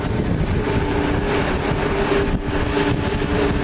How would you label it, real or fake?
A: real